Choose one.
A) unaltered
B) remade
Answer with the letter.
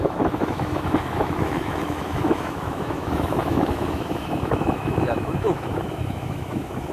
B